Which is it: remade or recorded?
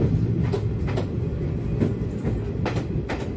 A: recorded